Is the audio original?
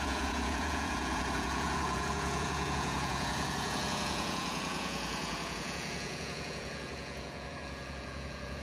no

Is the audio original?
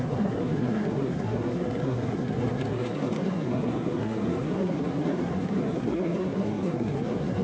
no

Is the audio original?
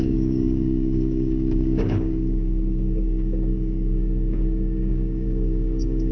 no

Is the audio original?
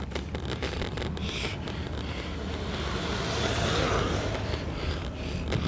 yes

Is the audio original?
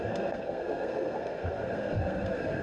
no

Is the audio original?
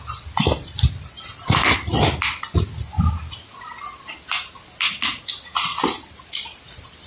yes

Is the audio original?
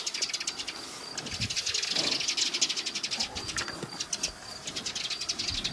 yes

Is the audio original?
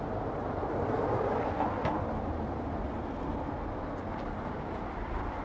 yes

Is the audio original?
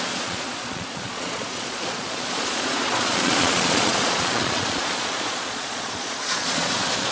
no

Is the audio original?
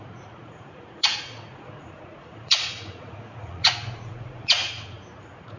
no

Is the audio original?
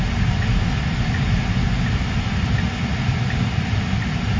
yes